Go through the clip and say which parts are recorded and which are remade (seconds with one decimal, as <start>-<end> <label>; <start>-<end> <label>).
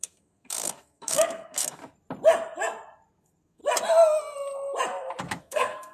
0.0-1.8 remade; 1.8-3.2 recorded; 3.2-3.6 remade; 3.6-5.4 recorded; 5.4-5.9 remade